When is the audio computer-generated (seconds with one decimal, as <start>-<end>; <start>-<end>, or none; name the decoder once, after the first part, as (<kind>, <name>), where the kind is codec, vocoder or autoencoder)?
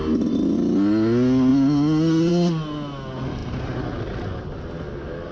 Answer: none